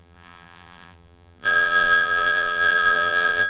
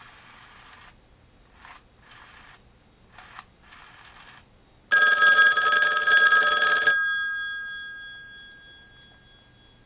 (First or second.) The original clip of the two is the second